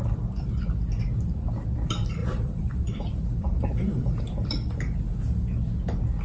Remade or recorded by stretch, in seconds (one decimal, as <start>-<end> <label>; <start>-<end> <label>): 0.0-2.2 recorded; 2.2-4.2 remade; 4.2-6.2 recorded